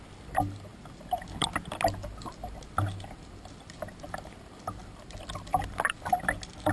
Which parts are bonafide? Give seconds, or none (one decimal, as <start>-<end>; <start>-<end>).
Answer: 0.0-6.7